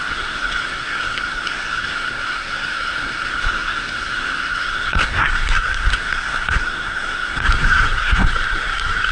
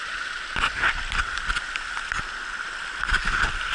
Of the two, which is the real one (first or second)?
second